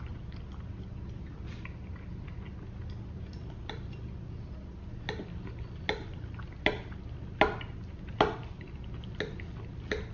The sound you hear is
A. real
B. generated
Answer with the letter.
A